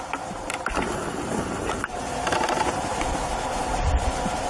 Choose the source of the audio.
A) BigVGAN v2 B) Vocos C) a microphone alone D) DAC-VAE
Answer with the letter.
C